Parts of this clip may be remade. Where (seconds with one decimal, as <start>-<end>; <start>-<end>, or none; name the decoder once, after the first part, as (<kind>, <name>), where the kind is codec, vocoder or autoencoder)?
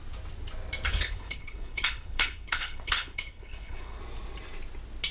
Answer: 0.9-4.0 (codec, HILCodec)